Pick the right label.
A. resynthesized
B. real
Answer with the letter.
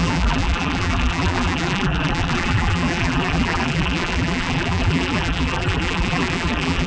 A